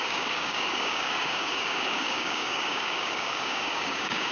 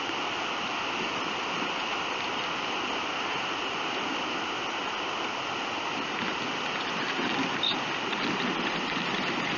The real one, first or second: second